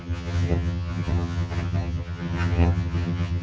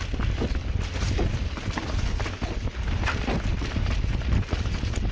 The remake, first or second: first